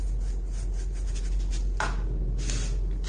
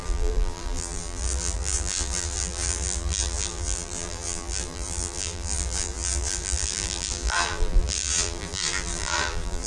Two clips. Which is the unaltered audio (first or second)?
first